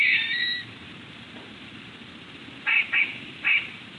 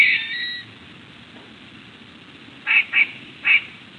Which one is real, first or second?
second